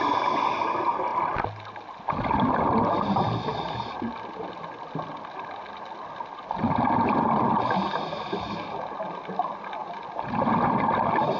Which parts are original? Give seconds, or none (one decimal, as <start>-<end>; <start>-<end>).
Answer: 0.0-11.4